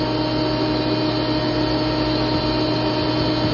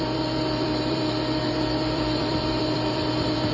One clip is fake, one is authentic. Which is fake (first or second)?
second